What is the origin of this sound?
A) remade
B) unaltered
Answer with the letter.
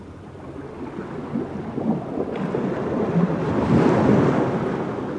B